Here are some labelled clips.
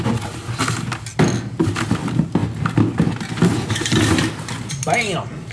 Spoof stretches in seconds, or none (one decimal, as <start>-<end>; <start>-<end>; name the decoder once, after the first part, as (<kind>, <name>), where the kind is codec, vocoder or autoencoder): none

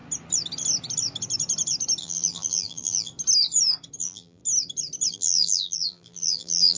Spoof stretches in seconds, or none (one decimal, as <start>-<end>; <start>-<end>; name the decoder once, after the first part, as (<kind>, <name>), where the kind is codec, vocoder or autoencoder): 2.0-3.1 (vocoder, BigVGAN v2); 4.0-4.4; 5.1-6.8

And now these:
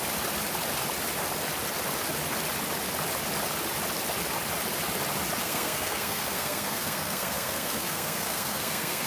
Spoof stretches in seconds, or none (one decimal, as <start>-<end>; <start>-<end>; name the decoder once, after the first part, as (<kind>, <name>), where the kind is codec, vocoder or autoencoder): 5.4-9.1 (codec, SNAC)

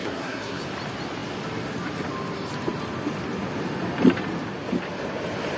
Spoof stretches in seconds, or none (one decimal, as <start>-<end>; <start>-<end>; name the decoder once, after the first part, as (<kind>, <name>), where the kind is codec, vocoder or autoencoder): 0.0-0.6 (codec, SNAC)

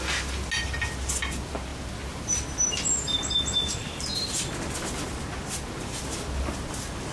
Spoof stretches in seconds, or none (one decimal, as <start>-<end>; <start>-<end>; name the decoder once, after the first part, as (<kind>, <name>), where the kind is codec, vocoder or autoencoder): none